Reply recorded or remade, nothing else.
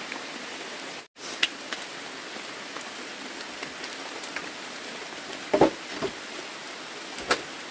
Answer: recorded